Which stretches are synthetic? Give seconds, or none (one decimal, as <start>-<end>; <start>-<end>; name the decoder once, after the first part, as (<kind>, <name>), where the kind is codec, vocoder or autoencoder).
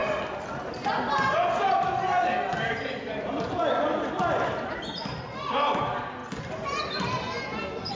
none